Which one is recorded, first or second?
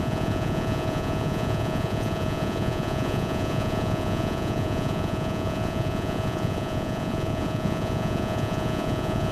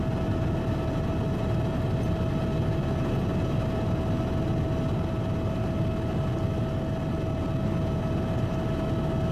second